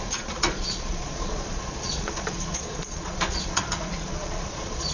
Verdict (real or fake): fake